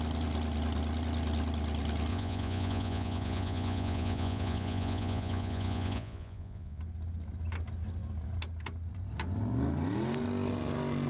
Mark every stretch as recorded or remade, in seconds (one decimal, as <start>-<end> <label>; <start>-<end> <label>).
0.0-2.1 recorded; 2.1-6.8 remade; 6.8-11.1 recorded